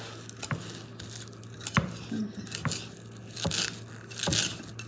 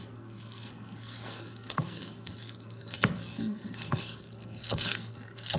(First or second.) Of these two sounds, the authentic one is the first